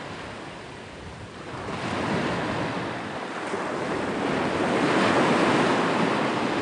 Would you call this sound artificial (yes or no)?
no